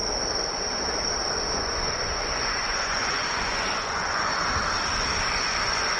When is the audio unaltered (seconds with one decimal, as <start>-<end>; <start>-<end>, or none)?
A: 0.0-1.4; 4.5-5.3